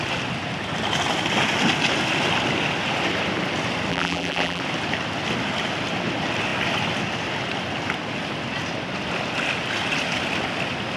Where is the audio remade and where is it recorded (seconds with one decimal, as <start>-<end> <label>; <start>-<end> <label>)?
0.0-3.9 recorded; 3.9-4.6 remade; 4.6-11.0 recorded